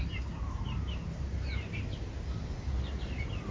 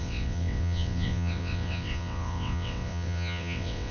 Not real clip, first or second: second